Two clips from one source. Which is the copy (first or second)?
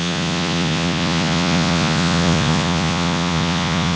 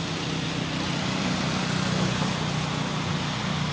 first